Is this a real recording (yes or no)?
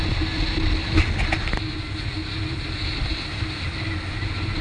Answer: yes